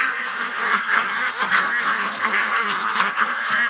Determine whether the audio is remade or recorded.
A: remade